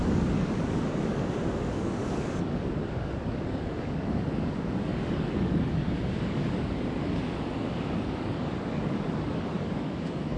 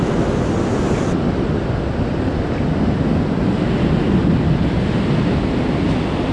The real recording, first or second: second